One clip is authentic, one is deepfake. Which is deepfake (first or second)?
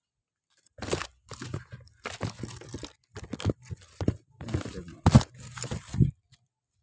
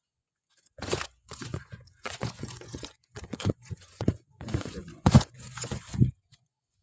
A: second